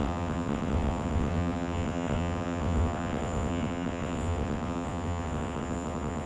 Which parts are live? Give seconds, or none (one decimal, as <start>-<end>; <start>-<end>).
none